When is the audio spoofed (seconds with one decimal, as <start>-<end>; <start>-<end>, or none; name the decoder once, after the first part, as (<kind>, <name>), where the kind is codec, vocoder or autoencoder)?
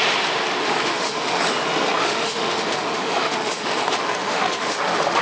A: 0.6-1.4 (autoencoder, DAC-VAE); 2.0-5.2